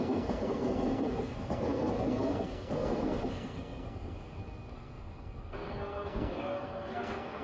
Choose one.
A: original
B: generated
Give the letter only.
B